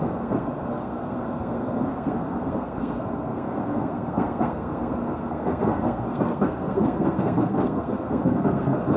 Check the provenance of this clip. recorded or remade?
remade